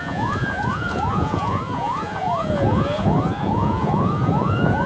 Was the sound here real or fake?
fake